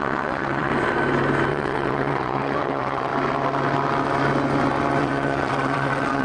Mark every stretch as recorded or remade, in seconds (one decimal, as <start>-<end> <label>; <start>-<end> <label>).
0.0-0.7 remade; 0.7-1.5 recorded; 1.5-3.1 remade; 3.1-5.0 recorded; 5.0-6.2 remade